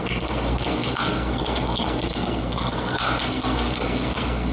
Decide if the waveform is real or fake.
fake